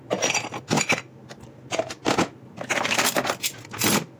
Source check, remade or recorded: recorded